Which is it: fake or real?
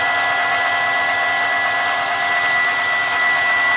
real